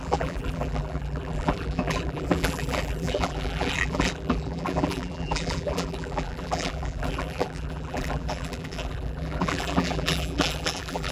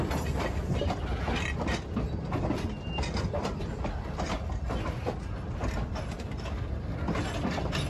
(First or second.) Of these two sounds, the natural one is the second